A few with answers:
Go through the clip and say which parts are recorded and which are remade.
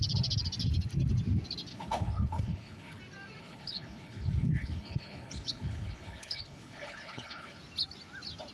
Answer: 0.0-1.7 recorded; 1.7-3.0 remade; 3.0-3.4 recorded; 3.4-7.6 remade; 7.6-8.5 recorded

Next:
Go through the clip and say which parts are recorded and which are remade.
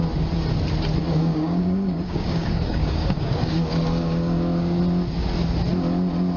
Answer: 0.0-1.0 recorded; 1.0-4.8 remade; 4.8-6.4 recorded